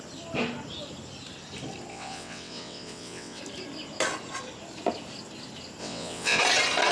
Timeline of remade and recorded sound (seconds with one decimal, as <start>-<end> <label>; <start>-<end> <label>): 0.0-1.9 recorded; 1.9-3.4 remade; 3.4-5.8 recorded; 5.8-6.4 remade; 6.4-6.9 recorded